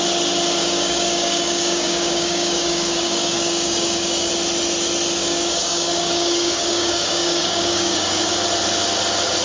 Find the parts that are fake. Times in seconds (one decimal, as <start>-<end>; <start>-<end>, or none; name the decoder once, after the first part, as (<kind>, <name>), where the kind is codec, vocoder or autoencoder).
0.6-4.3 (codec, DAC); 5.2-8.3